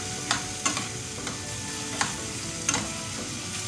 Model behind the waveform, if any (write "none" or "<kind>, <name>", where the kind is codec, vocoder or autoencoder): none